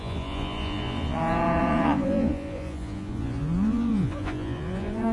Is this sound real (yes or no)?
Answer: no